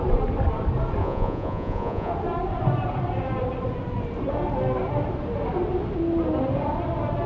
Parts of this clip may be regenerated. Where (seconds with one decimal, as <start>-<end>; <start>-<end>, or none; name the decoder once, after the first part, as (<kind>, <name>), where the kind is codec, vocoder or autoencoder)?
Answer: 1.0-2.1 (vocoder, Vocos)